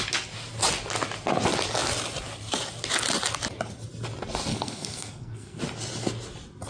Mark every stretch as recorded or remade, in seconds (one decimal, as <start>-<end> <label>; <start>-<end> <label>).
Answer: 0.0-4.5 recorded; 4.5-5.6 remade; 5.6-6.7 recorded